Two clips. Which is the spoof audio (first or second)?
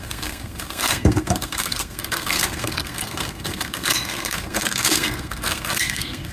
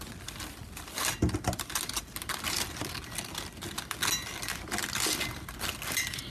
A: first